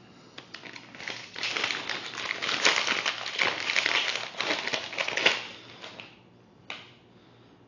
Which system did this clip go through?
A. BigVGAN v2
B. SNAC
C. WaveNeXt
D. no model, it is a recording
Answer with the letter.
D